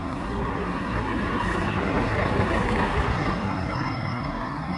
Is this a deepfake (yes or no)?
yes